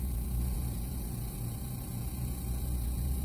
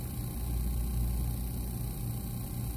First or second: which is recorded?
second